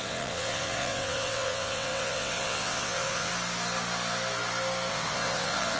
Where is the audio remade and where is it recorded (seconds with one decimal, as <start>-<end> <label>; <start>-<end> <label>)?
0.0-3.3 remade; 3.3-4.9 recorded; 4.9-5.8 remade

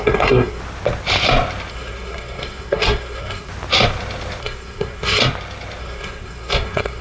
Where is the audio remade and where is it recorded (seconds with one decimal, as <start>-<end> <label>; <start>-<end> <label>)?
0.0-0.6 remade; 0.6-1.7 recorded; 1.7-3.5 remade; 3.5-4.4 recorded; 4.4-5.2 remade; 5.2-5.8 recorded; 5.8-7.0 remade

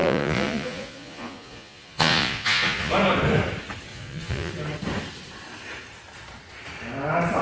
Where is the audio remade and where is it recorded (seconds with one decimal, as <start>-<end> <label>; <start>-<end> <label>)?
0.0-2.9 remade; 2.9-3.9 recorded; 3.9-4.5 remade; 4.5-7.4 recorded

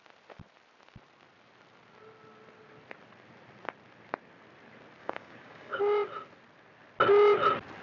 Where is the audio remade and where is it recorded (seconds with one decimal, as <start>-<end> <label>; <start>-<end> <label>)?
0.0-5.0 recorded; 5.0-5.8 remade; 5.8-7.8 recorded